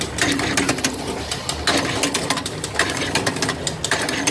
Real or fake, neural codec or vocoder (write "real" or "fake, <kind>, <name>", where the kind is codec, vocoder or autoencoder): real